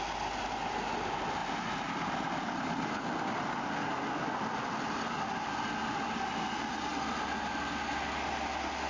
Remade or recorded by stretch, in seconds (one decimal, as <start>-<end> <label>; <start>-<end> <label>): 0.0-8.9 recorded